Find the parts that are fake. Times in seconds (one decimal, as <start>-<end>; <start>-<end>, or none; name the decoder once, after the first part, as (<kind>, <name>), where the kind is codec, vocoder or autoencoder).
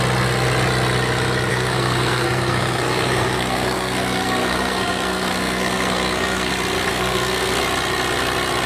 1.5-6.5 (codec, SNAC); 6.9-7.6